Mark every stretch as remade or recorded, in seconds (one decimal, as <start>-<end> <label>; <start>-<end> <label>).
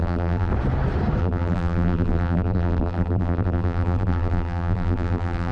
0.0-0.5 remade; 0.5-1.2 recorded; 1.2-5.5 remade